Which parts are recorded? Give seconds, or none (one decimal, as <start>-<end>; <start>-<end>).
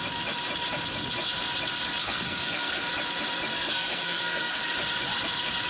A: 0.0-2.0; 2.9-3.5; 4.6-5.7